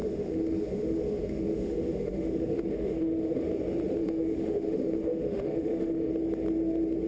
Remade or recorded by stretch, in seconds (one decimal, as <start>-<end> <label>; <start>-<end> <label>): 0.0-3.4 remade; 3.4-4.0 recorded; 4.0-6.1 remade; 6.1-7.1 recorded